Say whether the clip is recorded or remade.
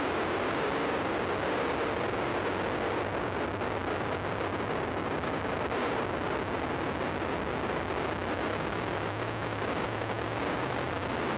recorded